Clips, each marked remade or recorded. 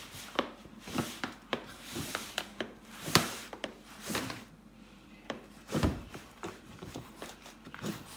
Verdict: remade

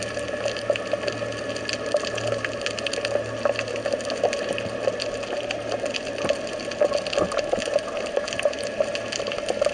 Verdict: recorded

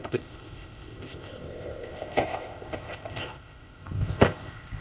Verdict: remade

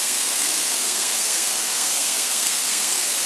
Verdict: remade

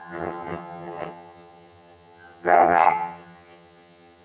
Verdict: remade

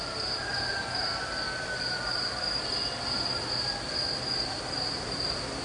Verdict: recorded